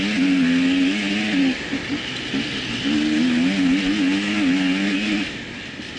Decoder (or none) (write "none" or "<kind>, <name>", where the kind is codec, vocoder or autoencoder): none